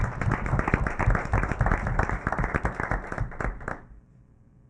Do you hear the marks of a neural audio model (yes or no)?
no